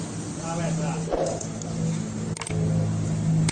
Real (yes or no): yes